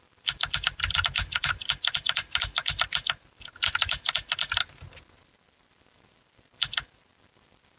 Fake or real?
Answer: real